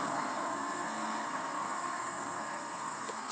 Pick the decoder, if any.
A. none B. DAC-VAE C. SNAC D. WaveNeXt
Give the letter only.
C